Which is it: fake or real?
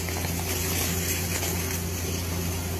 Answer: real